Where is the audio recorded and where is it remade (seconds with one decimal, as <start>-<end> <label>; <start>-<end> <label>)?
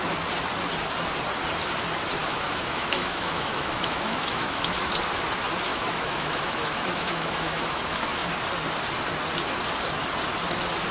0.0-2.2 recorded; 2.2-4.7 remade; 4.7-5.7 recorded; 5.7-7.8 remade; 7.8-10.9 recorded